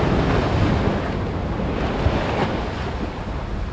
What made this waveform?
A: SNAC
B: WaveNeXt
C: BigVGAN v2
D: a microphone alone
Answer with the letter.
D